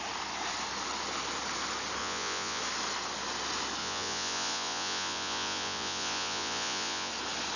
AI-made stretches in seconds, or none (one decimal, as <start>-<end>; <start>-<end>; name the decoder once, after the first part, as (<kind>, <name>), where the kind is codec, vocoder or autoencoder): 2.0-2.6 (vocoder, Vocos); 3.8-7.1